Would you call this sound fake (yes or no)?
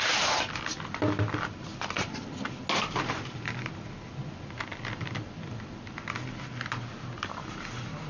no